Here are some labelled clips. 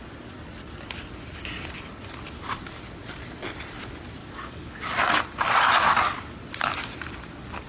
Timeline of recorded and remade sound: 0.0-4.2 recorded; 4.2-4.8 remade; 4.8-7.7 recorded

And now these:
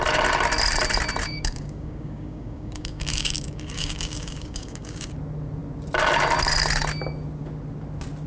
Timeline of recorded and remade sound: 0.0-1.2 recorded; 1.2-5.1 remade; 5.1-8.3 recorded

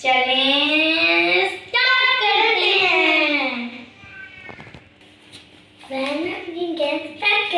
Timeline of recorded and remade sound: 0.0-7.6 recorded

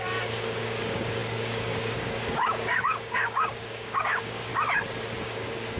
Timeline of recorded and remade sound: 0.0-4.5 remade; 4.5-5.2 recorded; 5.2-5.8 remade